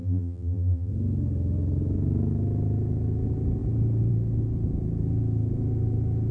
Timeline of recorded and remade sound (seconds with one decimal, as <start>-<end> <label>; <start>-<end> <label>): 0.0-0.9 remade; 0.9-6.3 recorded